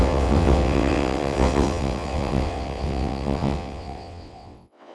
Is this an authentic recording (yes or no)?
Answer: no